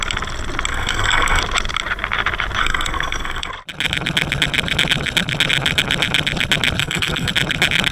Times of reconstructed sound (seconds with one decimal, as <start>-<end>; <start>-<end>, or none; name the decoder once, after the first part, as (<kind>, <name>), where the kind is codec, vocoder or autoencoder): 0.7-1.4 (codec, SNAC); 2.6-3.5; 6.8-7.3